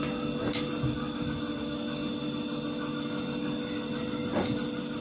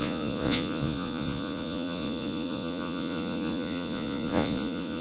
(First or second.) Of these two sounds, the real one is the first